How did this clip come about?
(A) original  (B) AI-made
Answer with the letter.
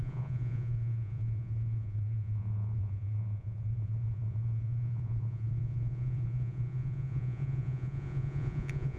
B